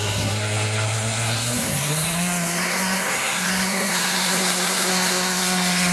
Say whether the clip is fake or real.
fake